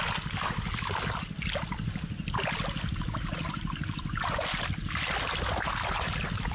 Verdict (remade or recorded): recorded